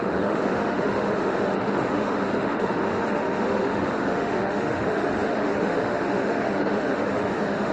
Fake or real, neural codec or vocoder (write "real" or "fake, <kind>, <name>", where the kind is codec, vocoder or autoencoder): fake, autoencoder, DAC-VAE